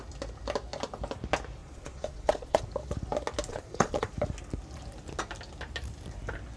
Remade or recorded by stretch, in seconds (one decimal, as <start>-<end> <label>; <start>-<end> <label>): 0.0-1.6 recorded; 1.6-2.6 remade; 2.6-3.5 recorded; 3.5-4.1 remade; 4.1-6.6 recorded

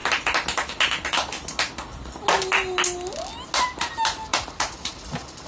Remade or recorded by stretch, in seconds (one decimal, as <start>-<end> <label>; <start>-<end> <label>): 0.0-4.3 recorded; 4.3-4.9 remade; 4.9-5.5 recorded